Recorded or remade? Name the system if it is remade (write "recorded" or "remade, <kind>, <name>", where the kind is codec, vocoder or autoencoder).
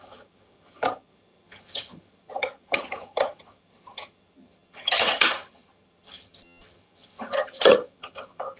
remade, vocoder, HiFi-GAN